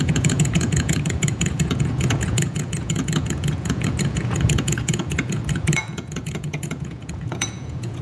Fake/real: fake